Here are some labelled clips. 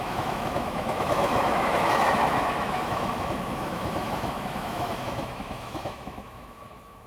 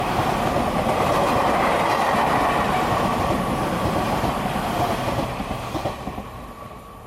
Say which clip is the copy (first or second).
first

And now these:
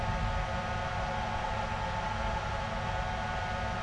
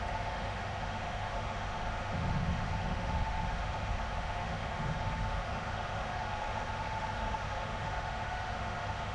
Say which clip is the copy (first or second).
second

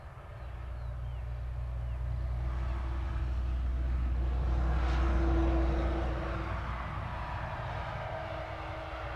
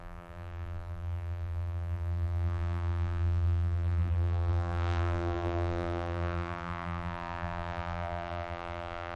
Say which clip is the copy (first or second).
second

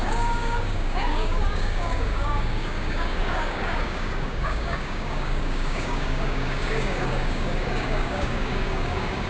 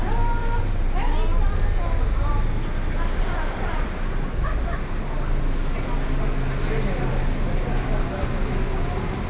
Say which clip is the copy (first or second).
first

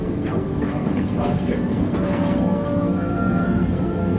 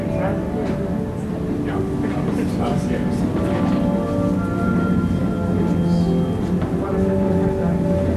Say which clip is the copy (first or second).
first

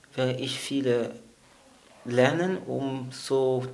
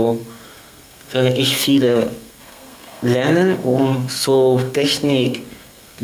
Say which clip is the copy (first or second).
second